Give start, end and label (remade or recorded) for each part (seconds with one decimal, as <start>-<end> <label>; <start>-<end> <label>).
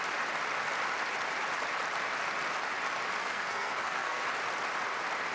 0.0-3.2 recorded; 3.2-4.2 remade; 4.2-5.3 recorded